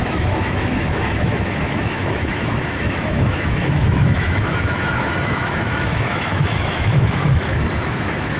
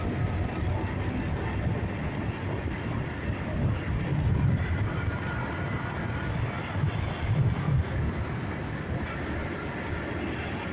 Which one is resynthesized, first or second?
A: first